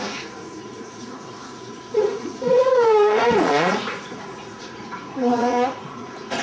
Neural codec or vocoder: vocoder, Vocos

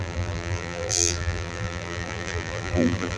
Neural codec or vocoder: vocoder, BigVGAN v2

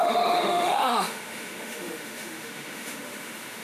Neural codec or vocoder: autoencoder, DAC-VAE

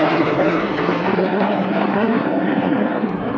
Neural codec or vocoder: codec, SNAC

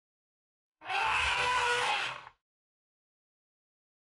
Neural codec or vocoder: codec, DAC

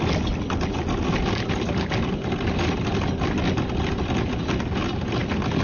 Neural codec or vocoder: none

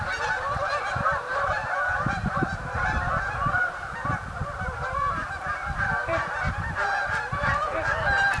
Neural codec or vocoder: vocoder, BigVGAN v2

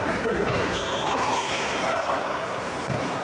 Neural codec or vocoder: codec, SNAC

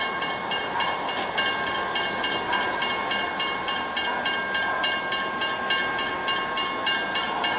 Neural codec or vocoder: none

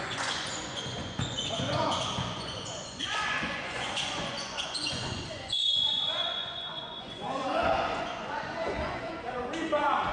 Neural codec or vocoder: vocoder, Vocos